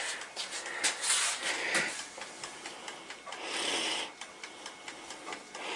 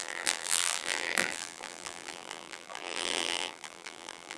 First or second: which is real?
first